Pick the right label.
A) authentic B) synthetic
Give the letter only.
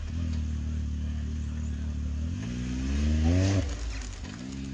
A